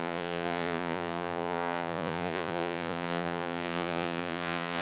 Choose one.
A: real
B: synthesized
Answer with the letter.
B